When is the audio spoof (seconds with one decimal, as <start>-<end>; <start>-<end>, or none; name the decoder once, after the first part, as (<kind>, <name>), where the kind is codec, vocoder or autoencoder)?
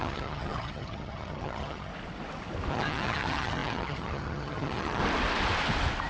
0.0-1.9 (vocoder, HiFi-GAN); 2.7-5.0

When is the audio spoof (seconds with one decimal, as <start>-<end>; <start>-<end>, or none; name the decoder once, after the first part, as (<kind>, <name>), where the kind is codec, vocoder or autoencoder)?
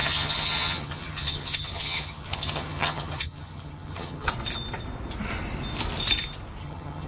0.0-4.3 (vocoder, HiFi-GAN); 6.6-7.1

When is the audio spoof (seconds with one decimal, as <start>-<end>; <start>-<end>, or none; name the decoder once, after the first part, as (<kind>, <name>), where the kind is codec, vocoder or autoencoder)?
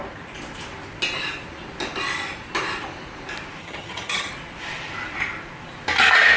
3.6-4.3 (vocoder, HiFi-GAN)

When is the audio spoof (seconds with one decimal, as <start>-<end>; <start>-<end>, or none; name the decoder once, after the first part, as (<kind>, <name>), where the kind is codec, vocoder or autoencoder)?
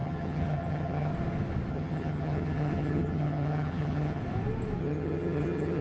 0.0-1.1 (vocoder, HiFi-GAN); 1.7-4.2; 4.8-5.8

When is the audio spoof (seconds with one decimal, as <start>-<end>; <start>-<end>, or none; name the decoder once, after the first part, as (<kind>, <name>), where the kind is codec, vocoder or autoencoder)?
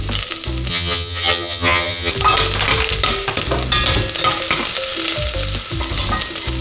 0.7-2.1 (vocoder, HiFi-GAN)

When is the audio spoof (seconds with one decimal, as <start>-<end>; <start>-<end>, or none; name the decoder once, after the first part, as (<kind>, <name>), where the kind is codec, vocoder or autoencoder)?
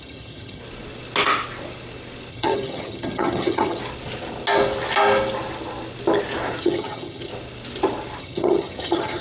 0.0-0.6 (vocoder, HiFi-GAN); 2.3-3.8; 6.6-7.3; 8.2-9.2